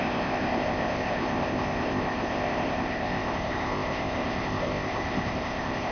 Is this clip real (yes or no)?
no